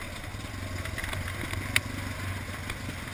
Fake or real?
real